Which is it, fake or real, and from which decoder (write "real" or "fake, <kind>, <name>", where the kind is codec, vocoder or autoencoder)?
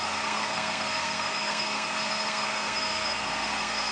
fake, codec, SNAC